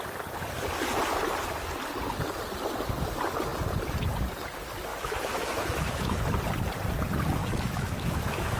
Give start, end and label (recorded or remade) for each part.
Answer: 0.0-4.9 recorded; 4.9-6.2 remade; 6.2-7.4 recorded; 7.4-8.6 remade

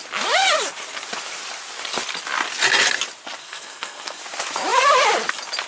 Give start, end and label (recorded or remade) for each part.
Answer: 0.0-3.4 recorded; 3.4-4.2 remade; 4.2-5.7 recorded

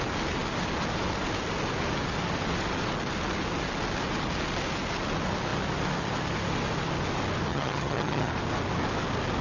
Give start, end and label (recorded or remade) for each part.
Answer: 0.0-7.5 recorded; 7.5-8.3 remade; 8.3-9.4 recorded

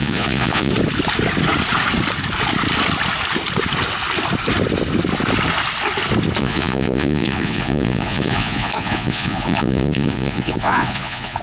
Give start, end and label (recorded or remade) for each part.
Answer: 0.0-0.7 remade; 0.7-6.4 recorded; 6.4-11.4 remade

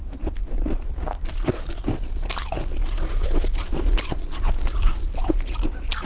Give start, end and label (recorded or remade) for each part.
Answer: 0.0-6.1 recorded